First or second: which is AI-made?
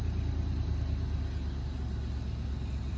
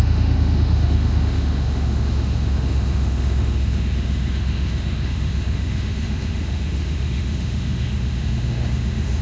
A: second